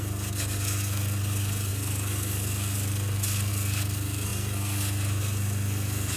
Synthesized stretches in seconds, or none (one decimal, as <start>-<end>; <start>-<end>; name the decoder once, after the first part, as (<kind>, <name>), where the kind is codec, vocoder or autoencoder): 0.0-6.2 (codec, SNAC)